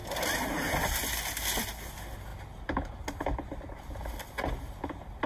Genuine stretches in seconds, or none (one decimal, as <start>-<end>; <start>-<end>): 0.0-5.3

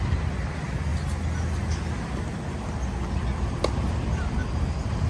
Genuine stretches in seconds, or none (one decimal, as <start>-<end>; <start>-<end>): 0.0-5.1

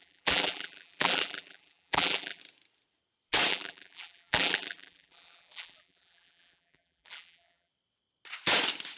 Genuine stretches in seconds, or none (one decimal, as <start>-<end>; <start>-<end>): 2.4-3.5; 7.7-9.0